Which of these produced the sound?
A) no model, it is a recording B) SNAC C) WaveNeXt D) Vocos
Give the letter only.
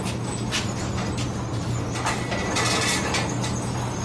A